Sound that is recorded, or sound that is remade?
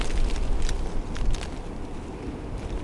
recorded